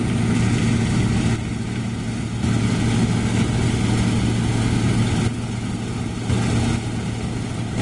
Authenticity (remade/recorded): recorded